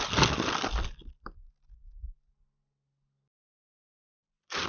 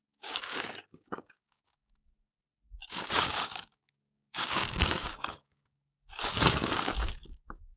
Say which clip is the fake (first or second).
second